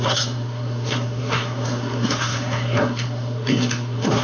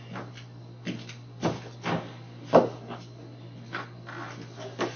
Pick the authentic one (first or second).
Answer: second